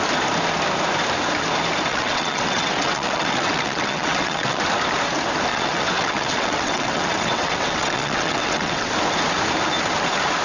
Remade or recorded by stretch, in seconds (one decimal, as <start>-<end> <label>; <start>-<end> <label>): 0.0-1.9 recorded; 1.9-4.6 remade; 4.6-5.5 recorded; 5.5-8.9 remade; 8.9-10.4 recorded